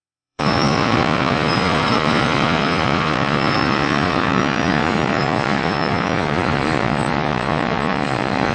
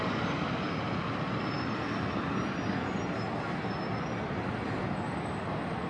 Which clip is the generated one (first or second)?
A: first